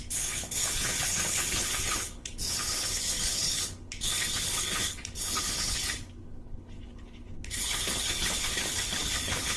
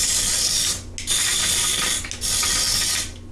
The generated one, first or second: first